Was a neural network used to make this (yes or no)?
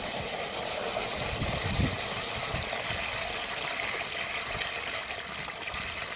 no